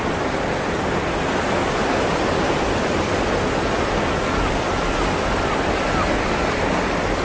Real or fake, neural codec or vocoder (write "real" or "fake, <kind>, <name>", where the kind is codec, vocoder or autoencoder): real